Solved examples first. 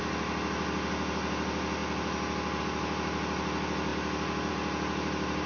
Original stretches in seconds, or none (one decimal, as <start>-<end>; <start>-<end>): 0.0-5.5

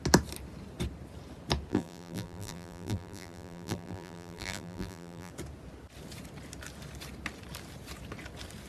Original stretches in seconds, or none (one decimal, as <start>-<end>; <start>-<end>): 0.0-1.7; 5.3-8.7

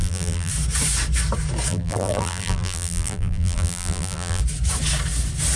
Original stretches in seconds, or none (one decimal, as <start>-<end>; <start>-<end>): 0.5-1.7; 4.4-5.6

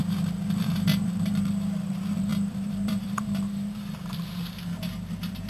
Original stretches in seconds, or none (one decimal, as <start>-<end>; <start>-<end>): none